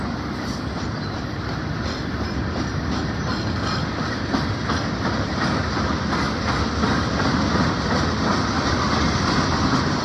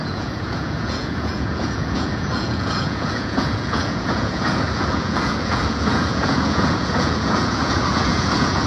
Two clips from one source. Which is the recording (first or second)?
first